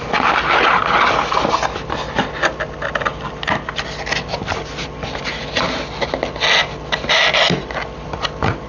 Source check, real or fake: real